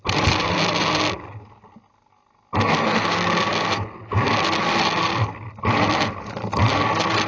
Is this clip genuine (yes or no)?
yes